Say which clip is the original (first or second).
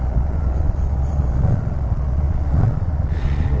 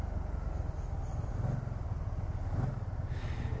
second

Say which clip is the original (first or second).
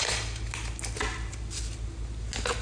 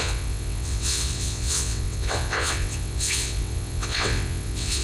first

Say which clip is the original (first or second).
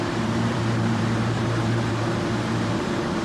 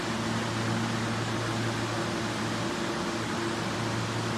second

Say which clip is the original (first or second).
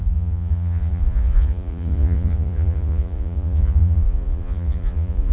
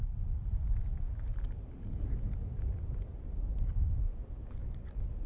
second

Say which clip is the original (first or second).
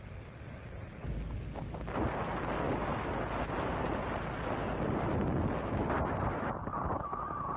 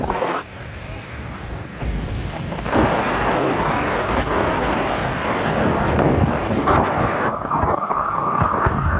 first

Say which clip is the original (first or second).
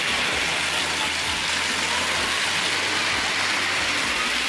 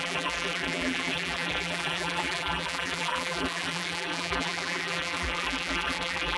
first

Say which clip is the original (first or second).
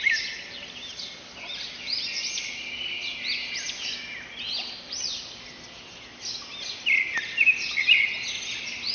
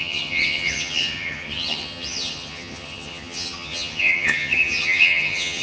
first